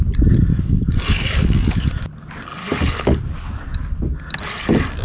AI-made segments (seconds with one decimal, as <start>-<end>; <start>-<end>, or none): 0.5-1.9; 2.6-3.2